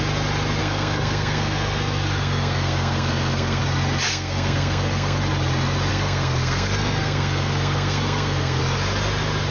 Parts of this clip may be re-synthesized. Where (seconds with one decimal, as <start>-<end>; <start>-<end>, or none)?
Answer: 0.6-3.6; 4.1-5.2; 5.9-8.6